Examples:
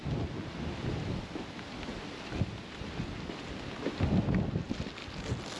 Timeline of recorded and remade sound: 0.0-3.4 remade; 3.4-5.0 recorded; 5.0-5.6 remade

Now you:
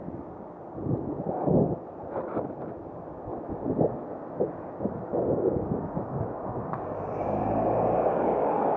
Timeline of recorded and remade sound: 0.0-5.1 recorded; 5.1-8.8 remade

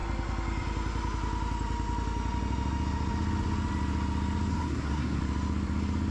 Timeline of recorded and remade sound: 0.0-4.5 recorded; 4.5-5.2 remade; 5.2-6.1 recorded